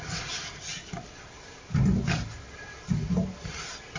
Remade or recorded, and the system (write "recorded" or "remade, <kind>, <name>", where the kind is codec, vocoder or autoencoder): recorded